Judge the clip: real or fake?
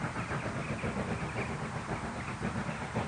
real